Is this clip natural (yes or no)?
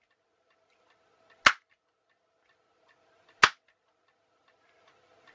yes